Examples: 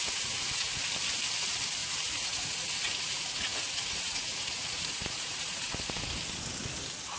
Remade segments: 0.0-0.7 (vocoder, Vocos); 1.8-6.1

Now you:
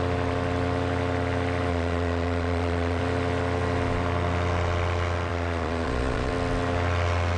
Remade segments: 1.7-3.0 (vocoder, Vocos); 5.3-6.3